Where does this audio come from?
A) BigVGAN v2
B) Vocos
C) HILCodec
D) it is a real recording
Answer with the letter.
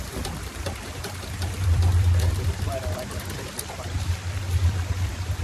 A